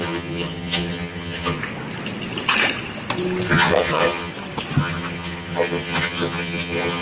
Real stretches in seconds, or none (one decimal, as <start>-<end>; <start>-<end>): 1.6-3.5; 4.3-4.8